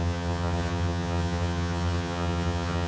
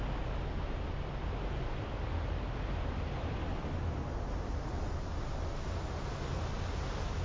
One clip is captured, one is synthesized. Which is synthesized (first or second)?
first